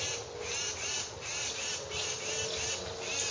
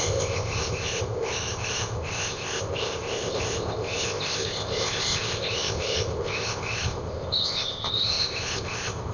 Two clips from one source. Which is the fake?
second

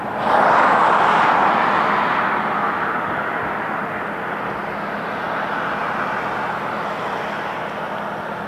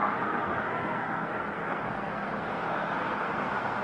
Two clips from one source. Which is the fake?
second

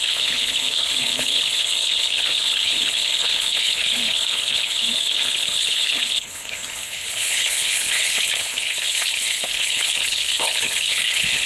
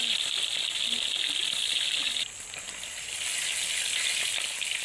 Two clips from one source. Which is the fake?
first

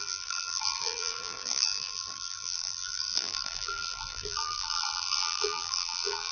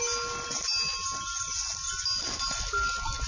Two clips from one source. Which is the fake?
first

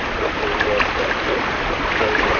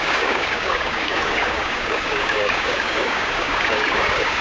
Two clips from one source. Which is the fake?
second